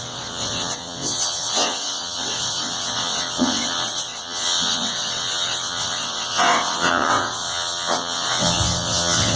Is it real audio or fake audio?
fake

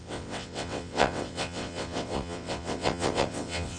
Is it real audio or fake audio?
fake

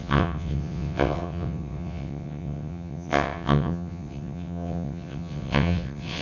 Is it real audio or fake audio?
fake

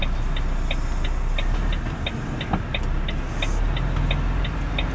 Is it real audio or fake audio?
real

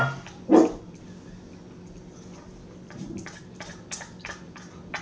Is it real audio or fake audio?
real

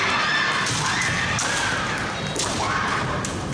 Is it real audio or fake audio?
real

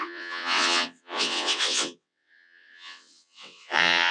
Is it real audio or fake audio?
fake